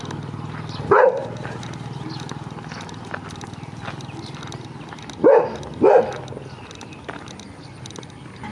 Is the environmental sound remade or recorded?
recorded